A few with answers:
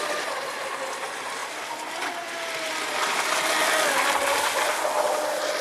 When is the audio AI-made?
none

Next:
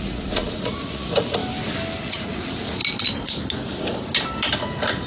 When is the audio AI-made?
0.0-1.4 (vocoder, Vocos); 2.0-2.8

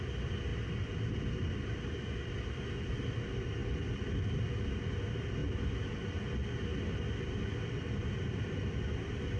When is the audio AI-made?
none

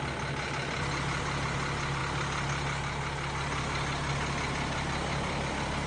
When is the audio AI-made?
none

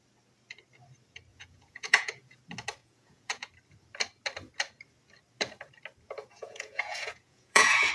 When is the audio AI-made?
1.3-2.4 (vocoder, Vocos); 2.8-3.5; 6.3-7.9

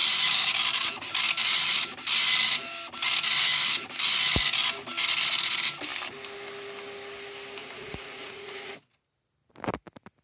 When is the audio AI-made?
7.6-8.7 (vocoder, Vocos)

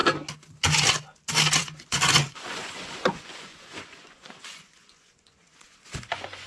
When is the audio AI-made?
1.6-6.5 (vocoder, Vocos)

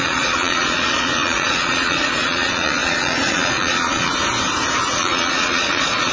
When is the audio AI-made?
0.0-4.1 (vocoder, Vocos); 4.9-6.1